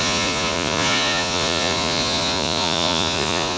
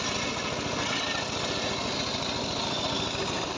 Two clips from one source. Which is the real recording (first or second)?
second